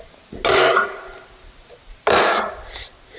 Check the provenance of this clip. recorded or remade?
recorded